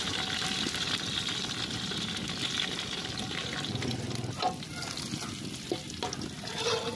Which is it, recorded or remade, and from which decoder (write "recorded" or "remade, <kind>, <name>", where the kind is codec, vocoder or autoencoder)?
recorded